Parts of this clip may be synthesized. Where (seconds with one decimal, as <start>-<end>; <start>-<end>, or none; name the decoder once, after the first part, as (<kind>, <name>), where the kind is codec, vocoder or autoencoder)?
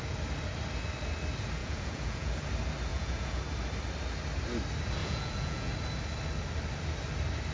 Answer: 1.6-2.3 (vocoder, Vocos); 2.9-3.4; 5.0-5.7